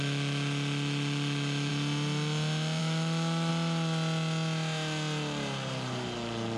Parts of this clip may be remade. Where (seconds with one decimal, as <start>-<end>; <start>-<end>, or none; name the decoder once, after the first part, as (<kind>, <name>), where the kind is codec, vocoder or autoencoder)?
0.0-1.7 (autoencoder, DAC-VAE); 2.8-3.5